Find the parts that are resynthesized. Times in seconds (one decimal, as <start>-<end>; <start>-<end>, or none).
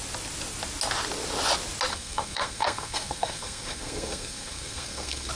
1.9-5.3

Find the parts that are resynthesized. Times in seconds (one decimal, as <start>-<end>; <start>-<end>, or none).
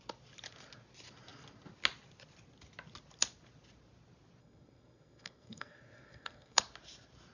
4.4-6.6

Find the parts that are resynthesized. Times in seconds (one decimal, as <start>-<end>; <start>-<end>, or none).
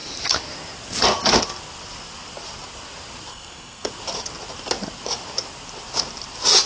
3.3-3.9